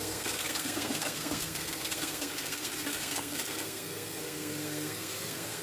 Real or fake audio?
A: fake